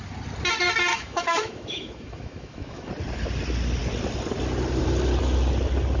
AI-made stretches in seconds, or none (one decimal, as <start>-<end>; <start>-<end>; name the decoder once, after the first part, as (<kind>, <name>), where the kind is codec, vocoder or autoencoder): 0.9-2.9 (autoencoder, DAC-VAE)